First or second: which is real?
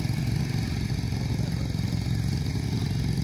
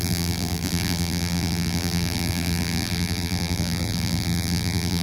first